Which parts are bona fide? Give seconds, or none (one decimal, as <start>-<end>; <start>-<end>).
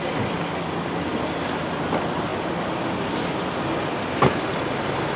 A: 0.0-5.2